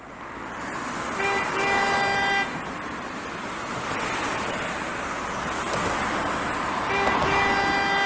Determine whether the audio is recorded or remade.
recorded